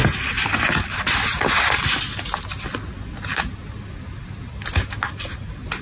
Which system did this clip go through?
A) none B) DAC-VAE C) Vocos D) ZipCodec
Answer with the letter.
A